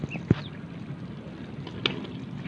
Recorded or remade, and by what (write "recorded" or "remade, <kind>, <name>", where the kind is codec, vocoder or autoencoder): recorded